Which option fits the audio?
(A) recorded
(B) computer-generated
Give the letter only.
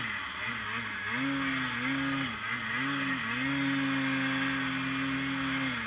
A